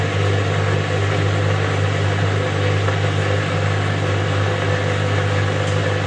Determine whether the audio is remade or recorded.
recorded